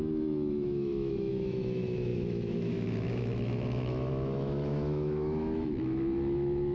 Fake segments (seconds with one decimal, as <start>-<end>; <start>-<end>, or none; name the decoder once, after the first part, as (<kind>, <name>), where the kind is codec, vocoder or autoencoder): 0.0-6.7 (autoencoder, DAC-VAE)